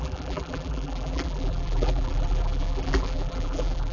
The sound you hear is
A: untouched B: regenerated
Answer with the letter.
B